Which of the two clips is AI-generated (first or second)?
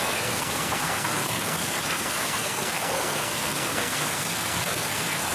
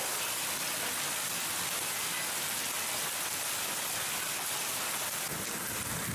first